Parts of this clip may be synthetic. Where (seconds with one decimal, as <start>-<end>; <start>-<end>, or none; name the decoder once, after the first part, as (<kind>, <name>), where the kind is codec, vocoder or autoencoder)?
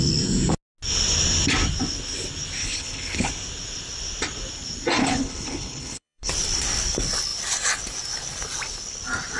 2.6-3.3 (codec, HILCodec); 5.0-6.3